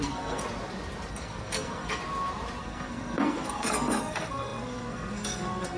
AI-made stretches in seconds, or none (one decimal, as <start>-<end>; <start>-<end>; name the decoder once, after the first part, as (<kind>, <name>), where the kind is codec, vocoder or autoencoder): 0.0-0.4 (codec, SNAC); 1.1-2.0; 2.6-5.8